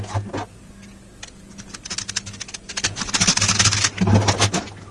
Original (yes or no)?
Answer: yes